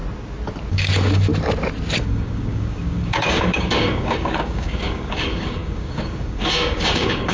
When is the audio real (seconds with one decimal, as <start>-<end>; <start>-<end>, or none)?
0.0-0.7; 1.3-2.0